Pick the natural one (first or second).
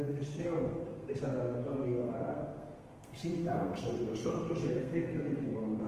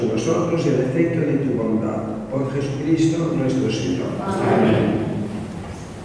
second